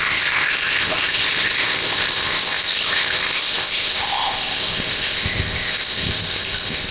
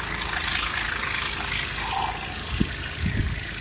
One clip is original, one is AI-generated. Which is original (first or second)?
second